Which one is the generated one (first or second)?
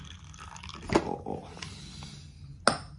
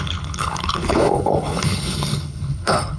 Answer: second